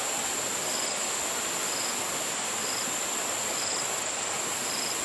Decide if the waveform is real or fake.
real